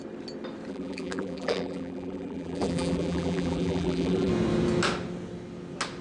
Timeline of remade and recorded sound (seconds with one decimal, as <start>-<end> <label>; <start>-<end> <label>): 0.0-0.7 recorded; 0.7-4.3 remade; 4.3-6.0 recorded